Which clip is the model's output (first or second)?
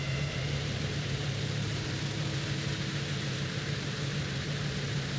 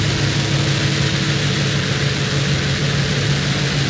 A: first